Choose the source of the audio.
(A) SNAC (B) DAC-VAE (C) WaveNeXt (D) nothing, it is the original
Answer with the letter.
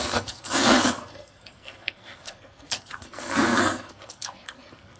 A